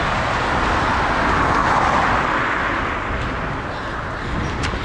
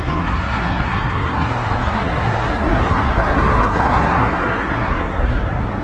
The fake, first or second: second